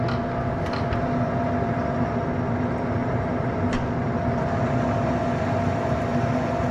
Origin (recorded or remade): recorded